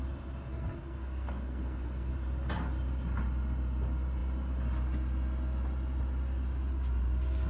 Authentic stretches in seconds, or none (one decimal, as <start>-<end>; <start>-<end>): 0.0-0.5; 2.1-7.5